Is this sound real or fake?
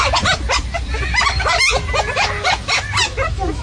real